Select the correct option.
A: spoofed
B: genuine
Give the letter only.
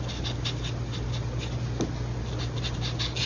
B